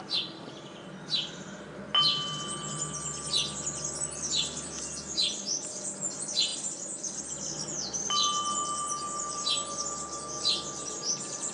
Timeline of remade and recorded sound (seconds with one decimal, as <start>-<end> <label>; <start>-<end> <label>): 0.0-11.5 recorded